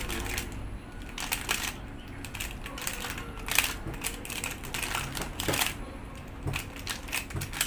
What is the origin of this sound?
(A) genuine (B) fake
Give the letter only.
A